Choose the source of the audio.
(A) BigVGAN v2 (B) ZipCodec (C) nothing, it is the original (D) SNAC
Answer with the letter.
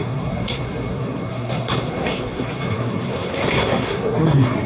D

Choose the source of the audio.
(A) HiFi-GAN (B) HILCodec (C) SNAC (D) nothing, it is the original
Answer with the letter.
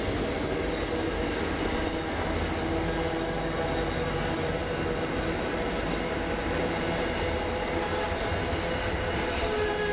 D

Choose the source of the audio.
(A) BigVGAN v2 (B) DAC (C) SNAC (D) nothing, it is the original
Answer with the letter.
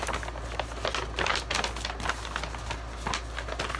D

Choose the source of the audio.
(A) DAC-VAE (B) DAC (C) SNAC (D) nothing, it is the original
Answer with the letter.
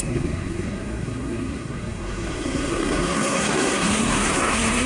C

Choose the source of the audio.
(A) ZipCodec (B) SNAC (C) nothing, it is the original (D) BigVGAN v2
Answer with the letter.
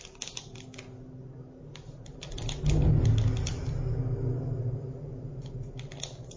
C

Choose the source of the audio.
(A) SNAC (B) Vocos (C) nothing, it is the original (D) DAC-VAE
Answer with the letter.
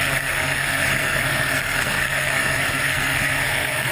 A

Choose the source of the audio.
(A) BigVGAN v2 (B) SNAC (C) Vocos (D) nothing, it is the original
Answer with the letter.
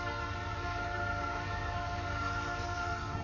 B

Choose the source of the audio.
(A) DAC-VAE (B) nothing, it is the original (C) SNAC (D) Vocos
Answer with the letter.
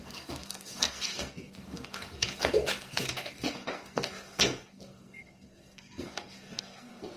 C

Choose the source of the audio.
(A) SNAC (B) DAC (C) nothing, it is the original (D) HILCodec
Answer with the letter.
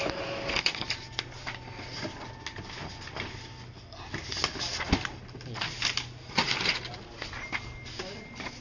C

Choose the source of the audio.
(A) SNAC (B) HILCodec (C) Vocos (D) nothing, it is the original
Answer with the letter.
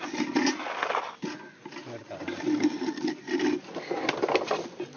D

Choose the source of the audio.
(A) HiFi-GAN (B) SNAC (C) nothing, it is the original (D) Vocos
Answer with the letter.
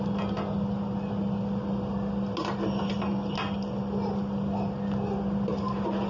C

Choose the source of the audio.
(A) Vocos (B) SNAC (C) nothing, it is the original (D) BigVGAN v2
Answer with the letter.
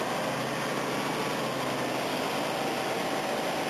C